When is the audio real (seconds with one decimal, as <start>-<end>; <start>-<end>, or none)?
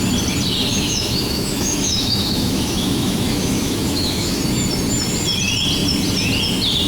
0.0-0.7; 4.4-6.9